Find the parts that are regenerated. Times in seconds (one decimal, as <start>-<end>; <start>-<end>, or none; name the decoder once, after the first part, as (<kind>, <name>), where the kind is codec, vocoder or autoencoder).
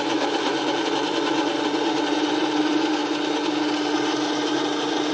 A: 0.0-3.0 (vocoder, BigVGAN v2)